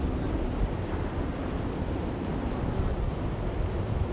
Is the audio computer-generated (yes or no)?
no